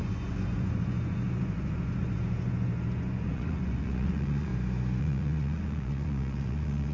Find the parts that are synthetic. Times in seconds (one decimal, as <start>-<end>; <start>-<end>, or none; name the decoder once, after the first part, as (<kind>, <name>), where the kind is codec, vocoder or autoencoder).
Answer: 0.0-4.5 (vocoder, Vocos); 5.0-6.9

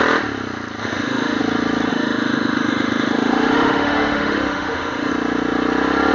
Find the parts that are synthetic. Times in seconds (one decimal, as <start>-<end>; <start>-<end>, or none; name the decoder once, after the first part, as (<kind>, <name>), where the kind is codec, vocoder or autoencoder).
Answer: 0.8-1.4 (autoencoder, DAC-VAE); 1.9-5.1

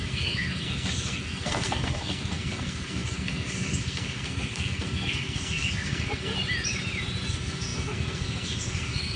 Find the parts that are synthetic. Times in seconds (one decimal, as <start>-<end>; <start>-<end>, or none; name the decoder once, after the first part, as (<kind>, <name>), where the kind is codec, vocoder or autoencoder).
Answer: 0.0-6.3 (codec, SNAC); 7.3-9.2

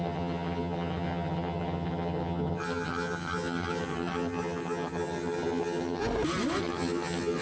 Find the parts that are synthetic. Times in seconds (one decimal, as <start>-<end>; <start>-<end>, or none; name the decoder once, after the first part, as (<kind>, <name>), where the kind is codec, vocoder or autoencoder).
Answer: 0.0-6.0 (vocoder, HiFi-GAN); 6.6-7.4